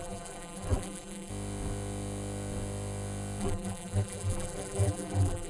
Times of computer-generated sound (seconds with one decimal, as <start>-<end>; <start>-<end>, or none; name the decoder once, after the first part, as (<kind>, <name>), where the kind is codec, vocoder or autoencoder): 0.0-1.3 (vocoder, BigVGAN v2); 3.4-5.5